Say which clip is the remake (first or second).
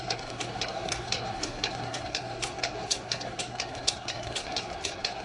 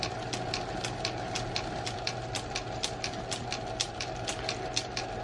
first